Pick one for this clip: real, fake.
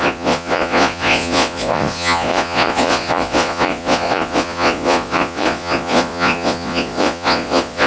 fake